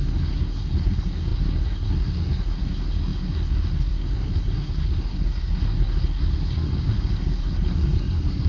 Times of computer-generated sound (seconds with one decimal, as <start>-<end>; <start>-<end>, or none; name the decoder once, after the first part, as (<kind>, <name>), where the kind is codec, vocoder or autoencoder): 0.0-8.5 (codec, SNAC)

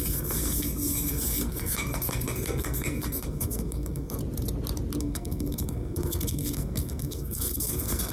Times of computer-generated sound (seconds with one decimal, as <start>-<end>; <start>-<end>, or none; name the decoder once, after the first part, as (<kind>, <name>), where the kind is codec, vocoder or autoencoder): 0.0-4.2 (codec, SNAC); 5.0-8.1

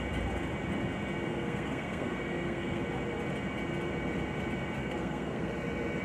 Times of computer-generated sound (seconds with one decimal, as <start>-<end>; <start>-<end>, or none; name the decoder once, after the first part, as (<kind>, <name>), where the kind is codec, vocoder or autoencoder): 1.3-2.8 (codec, SNAC); 4.8-5.5

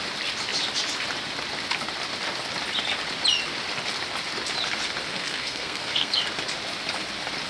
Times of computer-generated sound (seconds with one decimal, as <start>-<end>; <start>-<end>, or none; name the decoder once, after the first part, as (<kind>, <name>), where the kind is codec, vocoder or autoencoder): 5.1-6.2 (codec, SNAC)